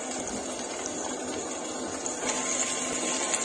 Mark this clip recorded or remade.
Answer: recorded